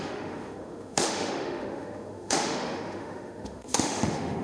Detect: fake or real fake